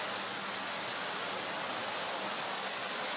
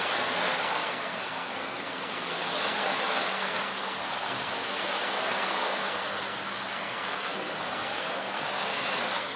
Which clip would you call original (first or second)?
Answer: first